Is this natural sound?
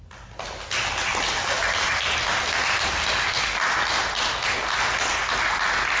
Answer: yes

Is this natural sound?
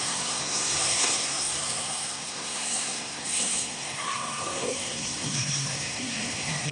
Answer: no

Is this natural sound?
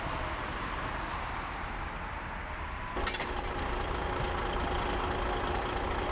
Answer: yes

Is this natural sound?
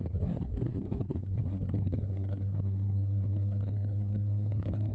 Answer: no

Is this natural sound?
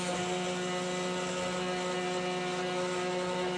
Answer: yes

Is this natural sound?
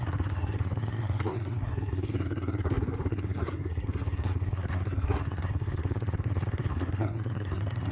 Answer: no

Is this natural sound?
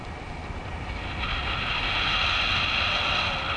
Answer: yes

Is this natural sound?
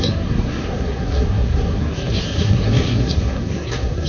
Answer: no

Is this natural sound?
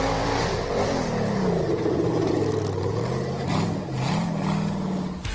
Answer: yes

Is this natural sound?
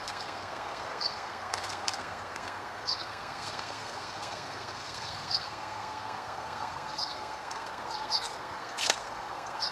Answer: no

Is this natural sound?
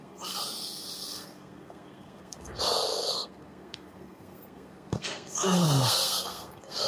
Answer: no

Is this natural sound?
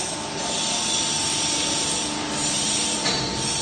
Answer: yes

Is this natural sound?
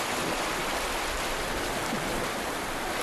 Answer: yes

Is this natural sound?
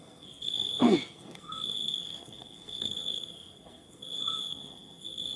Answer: no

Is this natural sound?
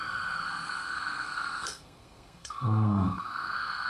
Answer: no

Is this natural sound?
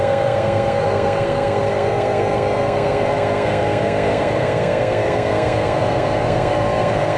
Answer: no